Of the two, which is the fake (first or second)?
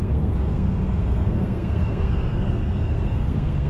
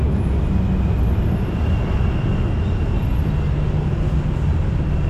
first